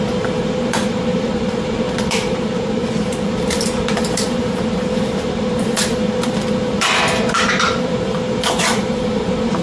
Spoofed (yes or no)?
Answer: yes